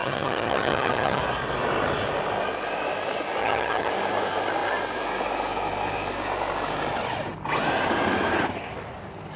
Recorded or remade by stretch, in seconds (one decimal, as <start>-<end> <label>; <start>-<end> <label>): 0.0-1.2 remade; 1.2-3.4 recorded; 3.4-3.9 remade; 3.9-9.4 recorded

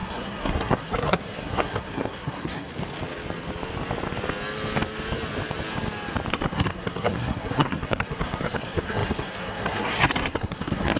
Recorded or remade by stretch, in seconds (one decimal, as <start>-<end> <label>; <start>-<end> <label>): 0.0-2.7 remade; 2.7-6.3 recorded; 6.3-11.0 remade